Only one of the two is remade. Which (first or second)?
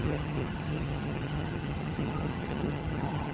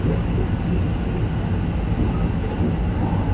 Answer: first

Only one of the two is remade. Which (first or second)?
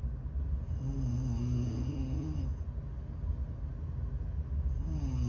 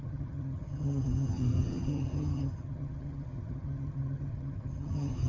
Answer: second